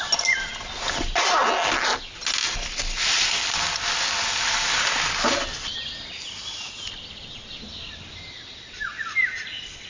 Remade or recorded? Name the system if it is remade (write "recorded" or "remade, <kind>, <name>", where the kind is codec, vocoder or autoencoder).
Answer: recorded